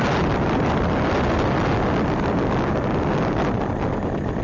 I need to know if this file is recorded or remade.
recorded